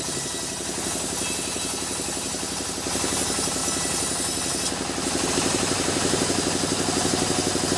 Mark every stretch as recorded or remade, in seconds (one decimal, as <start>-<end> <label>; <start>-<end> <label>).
0.0-7.8 recorded